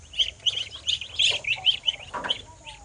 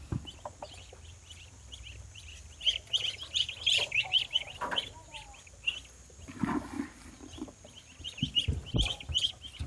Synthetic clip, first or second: second